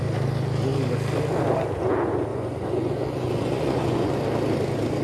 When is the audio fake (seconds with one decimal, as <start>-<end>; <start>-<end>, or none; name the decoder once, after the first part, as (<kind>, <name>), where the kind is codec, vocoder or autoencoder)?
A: 2.3-4.1 (vocoder, Vocos)